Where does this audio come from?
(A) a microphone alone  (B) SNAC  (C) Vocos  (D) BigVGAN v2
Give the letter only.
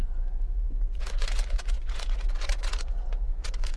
C